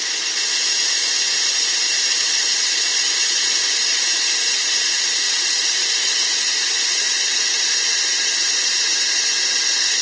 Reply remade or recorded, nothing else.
remade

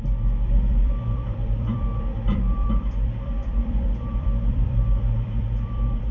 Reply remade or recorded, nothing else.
remade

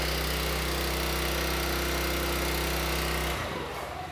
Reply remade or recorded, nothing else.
recorded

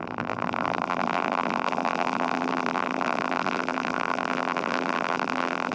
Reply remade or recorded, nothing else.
remade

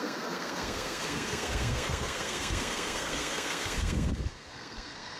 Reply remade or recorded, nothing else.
remade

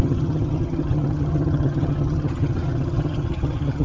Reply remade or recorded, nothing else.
remade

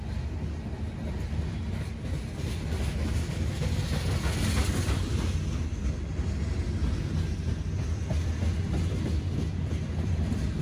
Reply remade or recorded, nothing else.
recorded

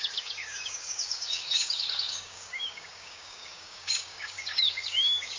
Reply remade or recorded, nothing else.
remade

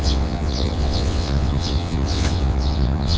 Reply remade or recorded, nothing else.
remade